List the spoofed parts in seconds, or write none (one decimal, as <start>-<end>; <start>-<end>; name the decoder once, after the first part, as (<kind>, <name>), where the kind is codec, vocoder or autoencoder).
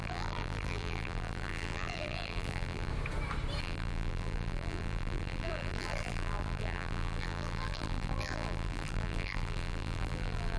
0.0-2.9 (vocoder, BigVGAN v2); 3.6-10.6